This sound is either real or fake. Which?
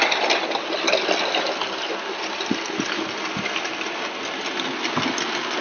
real